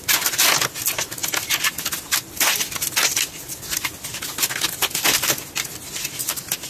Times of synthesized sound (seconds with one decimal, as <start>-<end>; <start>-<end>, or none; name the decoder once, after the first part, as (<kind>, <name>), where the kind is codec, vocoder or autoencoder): none